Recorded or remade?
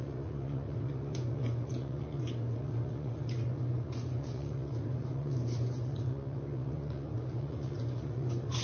remade